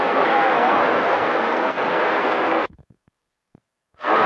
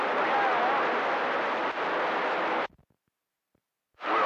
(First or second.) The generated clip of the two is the first